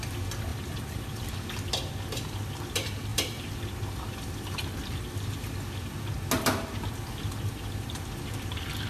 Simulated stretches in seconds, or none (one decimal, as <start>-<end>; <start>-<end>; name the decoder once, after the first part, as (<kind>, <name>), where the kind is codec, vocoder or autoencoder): none